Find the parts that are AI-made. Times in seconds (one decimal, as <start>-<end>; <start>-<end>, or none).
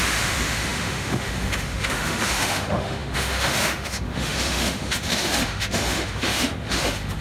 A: 0.0-7.2